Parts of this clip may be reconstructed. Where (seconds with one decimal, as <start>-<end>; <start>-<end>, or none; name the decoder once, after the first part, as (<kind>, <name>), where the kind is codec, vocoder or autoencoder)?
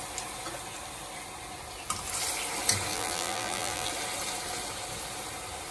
2.9-3.9 (vocoder, BigVGAN v2)